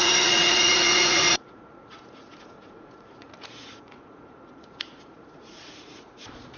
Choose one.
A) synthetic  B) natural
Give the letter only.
A